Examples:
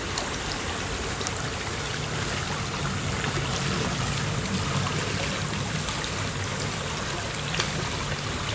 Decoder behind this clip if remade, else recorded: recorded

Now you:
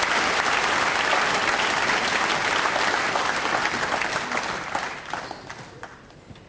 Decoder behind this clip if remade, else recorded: recorded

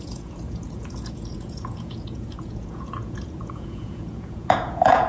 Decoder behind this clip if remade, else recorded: remade, vocoder, Vocos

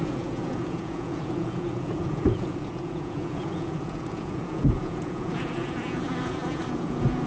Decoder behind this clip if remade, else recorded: remade, vocoder, Vocos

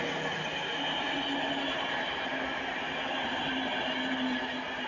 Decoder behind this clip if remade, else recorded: recorded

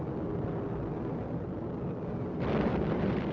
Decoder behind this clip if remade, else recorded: recorded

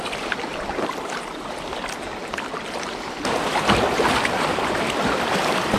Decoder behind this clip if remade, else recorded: recorded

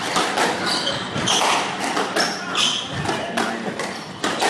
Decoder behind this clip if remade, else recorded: remade, vocoder, BigVGAN v2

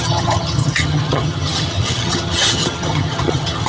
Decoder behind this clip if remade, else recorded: remade, vocoder, HiFi-GAN